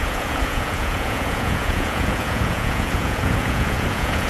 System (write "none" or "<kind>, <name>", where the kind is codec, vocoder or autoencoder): vocoder, Vocos